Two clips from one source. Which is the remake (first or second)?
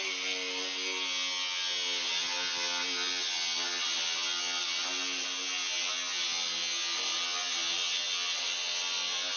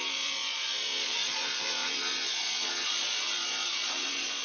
second